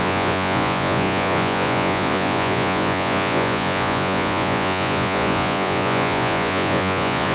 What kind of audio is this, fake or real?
fake